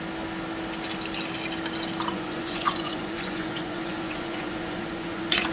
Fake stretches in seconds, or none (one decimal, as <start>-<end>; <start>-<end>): 2.1-5.5